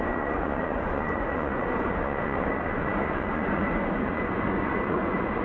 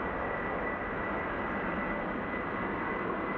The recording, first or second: second